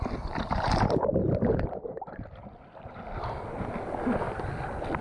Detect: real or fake real